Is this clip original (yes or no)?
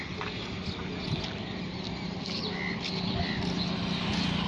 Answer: yes